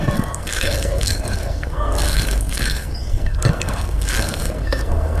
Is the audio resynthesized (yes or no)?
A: yes